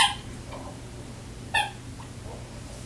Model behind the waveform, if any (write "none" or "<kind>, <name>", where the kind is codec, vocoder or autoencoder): none